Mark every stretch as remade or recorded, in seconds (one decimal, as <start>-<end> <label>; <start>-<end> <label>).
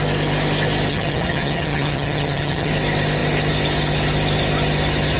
0.0-0.9 recorded; 0.9-2.7 remade; 2.7-5.2 recorded